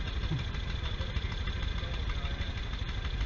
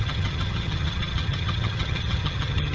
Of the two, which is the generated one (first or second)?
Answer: second